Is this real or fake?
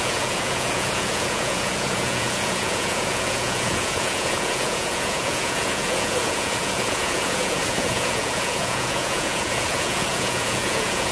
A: fake